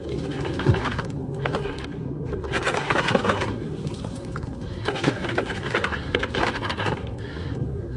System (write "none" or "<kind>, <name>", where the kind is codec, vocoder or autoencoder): codec, SNAC